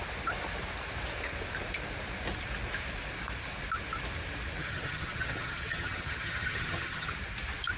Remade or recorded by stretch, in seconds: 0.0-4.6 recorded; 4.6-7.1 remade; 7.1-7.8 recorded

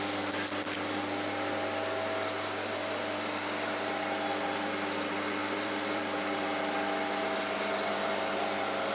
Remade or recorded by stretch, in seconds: 0.0-5.4 recorded; 5.4-6.0 remade; 6.0-8.9 recorded

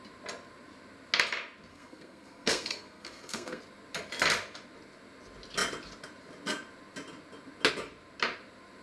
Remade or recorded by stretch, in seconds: 0.0-1.7 recorded; 1.7-3.6 remade; 3.6-8.8 recorded

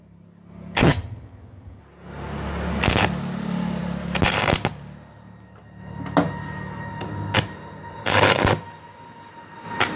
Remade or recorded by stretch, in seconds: 0.0-0.8 recorded; 0.8-1.8 remade; 1.8-10.0 recorded

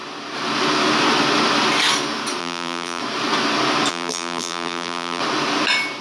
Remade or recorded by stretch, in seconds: 0.0-2.4 recorded; 2.4-3.0 remade; 3.0-3.9 recorded; 3.9-5.2 remade; 5.2-6.0 recorded